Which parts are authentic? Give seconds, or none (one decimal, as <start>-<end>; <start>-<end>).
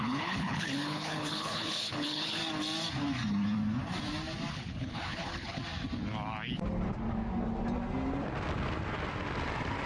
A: 2.4-4.5; 5.6-9.9